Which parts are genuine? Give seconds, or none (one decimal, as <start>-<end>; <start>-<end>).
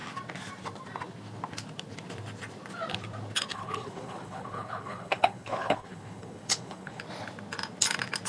0.0-3.5; 7.0-8.3